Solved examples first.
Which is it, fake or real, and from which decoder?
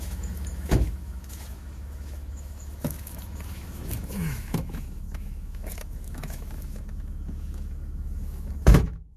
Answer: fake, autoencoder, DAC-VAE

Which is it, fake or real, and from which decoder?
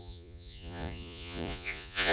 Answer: fake, vocoder, Vocos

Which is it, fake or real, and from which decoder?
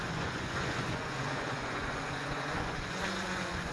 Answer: fake, vocoder, Vocos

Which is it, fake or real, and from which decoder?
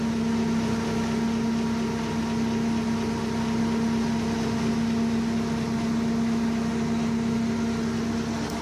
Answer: real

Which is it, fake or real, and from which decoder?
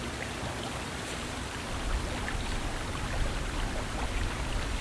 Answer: real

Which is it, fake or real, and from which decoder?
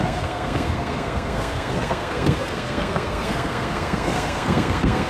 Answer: fake, codec, SNAC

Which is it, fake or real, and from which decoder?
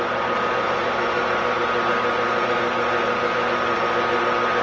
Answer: real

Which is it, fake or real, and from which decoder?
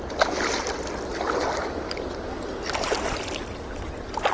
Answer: real